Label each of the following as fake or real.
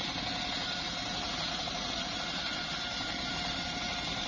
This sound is real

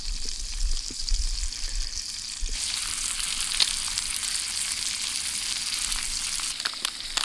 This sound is real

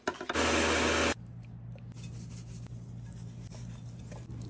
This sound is real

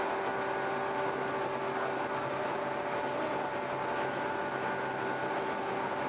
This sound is real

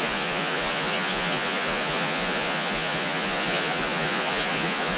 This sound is fake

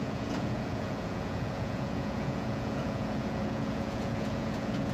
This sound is fake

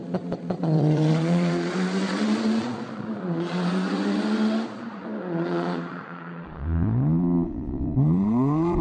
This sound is fake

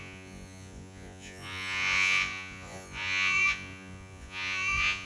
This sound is fake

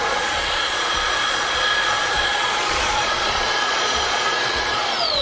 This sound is fake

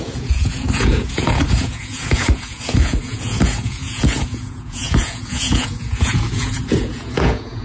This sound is fake